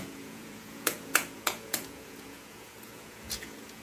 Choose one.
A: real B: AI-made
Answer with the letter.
B